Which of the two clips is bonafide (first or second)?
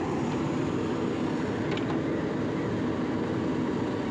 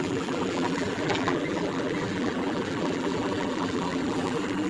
first